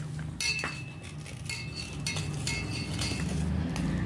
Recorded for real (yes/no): yes